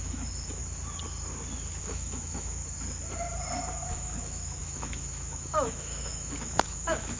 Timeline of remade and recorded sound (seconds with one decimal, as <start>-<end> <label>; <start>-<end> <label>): 0.0-0.6 remade; 0.6-1.8 recorded; 1.8-2.6 remade; 2.6-3.9 recorded; 3.9-7.2 remade